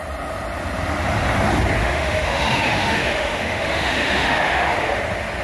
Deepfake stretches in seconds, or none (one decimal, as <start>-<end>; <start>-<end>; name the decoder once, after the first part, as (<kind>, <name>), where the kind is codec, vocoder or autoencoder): 1.8-5.0 (autoencoder, DAC-VAE)